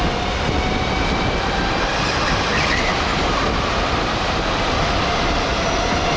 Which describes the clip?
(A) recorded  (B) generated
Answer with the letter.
A